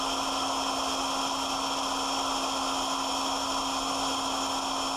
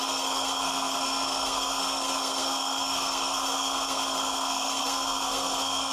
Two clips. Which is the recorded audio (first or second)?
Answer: first